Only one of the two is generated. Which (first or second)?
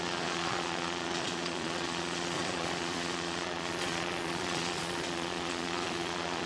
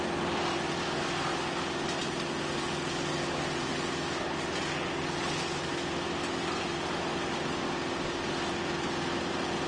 first